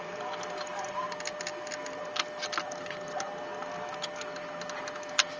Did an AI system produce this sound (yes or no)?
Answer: no